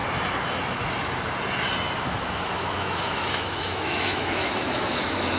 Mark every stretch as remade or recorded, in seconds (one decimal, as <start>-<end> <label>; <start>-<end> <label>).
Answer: 0.0-2.0 recorded; 2.0-5.4 remade